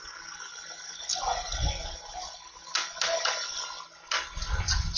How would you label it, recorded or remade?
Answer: recorded